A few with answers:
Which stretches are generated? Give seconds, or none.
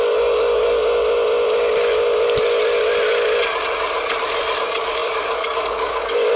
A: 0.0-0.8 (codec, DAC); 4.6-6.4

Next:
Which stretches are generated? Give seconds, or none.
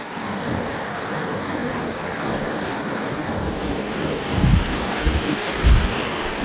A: 0.0-6.4 (codec, DAC)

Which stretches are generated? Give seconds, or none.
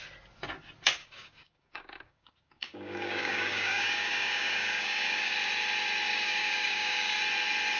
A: 1.0-5.3 (codec, DAC); 6.1-7.2